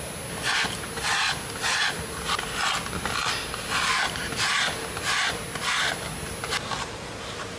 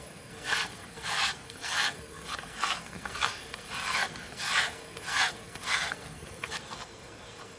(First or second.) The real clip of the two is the first